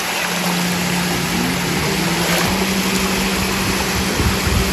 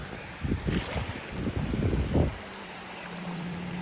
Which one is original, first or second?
first